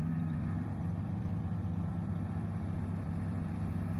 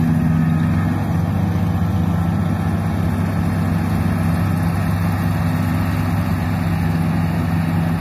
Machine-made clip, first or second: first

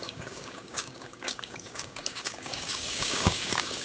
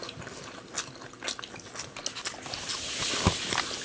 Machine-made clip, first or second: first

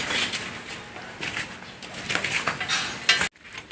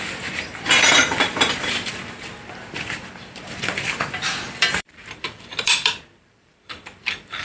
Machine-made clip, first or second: second